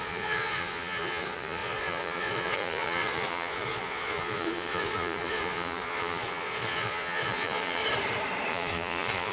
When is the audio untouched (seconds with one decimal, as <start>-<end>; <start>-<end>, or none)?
7.8-8.5